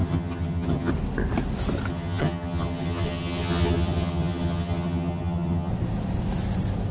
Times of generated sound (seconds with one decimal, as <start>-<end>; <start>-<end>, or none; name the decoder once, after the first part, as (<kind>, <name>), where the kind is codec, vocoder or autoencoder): 0.0-0.9 (vocoder, HiFi-GAN); 1.9-5.7